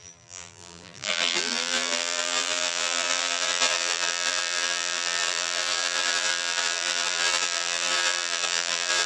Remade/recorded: remade